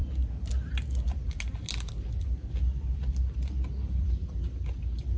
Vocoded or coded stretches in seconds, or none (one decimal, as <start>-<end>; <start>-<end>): none